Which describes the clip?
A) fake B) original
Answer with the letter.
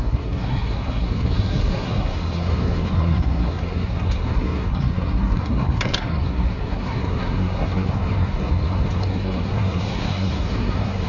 A